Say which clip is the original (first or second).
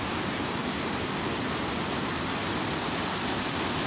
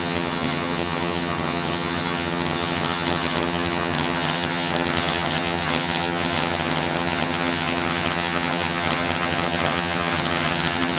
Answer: first